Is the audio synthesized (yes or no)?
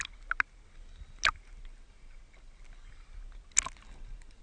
no